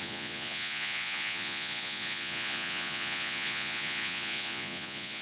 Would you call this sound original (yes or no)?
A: no